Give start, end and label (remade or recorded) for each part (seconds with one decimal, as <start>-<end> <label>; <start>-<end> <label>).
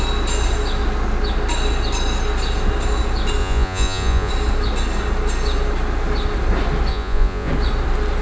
0.0-3.4 recorded; 3.4-4.3 remade; 4.3-6.9 recorded; 6.9-7.5 remade; 7.5-8.2 recorded